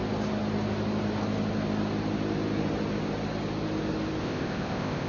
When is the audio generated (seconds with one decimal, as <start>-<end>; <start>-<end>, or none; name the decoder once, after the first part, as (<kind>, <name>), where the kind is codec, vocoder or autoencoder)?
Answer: 4.2-5.1 (codec, ZipCodec)